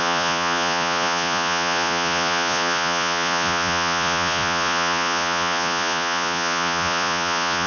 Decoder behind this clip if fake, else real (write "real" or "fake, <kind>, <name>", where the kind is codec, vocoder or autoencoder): fake, vocoder, Vocos